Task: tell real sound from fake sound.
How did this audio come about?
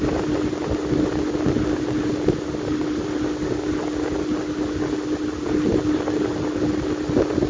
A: real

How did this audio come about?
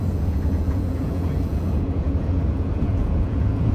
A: fake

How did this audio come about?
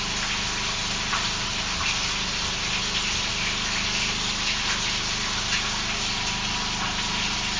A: real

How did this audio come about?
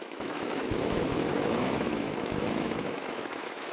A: fake